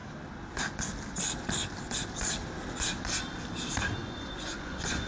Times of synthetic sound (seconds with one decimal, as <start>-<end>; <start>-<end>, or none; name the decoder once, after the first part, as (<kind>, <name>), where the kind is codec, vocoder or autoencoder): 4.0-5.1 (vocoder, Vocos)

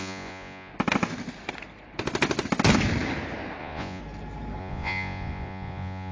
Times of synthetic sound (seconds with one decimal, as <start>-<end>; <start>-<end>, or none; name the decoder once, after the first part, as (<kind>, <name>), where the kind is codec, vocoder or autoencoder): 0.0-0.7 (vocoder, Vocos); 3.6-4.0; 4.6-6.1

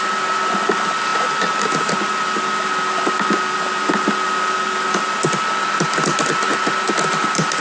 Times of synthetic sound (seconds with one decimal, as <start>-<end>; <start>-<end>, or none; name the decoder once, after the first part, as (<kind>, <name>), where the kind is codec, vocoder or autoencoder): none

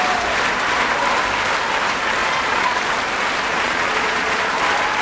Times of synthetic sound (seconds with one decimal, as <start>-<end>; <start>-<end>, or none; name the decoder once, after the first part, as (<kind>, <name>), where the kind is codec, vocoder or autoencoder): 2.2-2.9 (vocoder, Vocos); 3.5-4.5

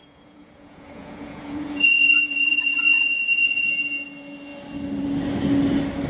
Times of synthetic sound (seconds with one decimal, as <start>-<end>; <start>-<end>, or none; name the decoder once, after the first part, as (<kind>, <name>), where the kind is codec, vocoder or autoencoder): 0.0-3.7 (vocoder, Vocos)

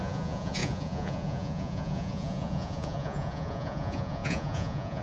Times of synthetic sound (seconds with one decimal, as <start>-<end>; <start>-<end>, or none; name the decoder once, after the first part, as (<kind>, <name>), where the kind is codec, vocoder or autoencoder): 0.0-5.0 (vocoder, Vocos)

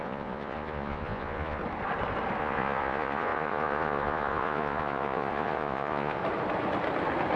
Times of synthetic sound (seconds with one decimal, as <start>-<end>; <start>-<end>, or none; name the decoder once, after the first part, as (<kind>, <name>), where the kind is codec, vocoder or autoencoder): 0.0-1.6 (vocoder, Vocos); 2.4-6.2